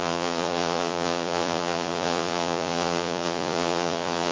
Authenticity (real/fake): fake